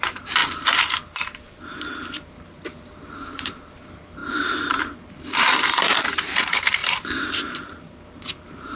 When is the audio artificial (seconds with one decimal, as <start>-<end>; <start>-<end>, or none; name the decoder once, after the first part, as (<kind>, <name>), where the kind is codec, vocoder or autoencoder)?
0.0-8.8 (vocoder, BigVGAN v2)